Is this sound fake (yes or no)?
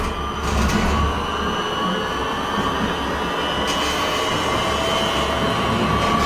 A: no